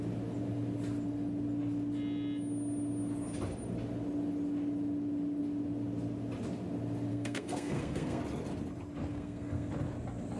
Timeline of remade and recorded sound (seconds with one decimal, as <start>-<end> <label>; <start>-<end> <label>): 0.0-7.1 recorded; 7.1-8.2 remade; 8.2-9.1 recorded; 9.1-9.7 remade; 9.7-10.4 recorded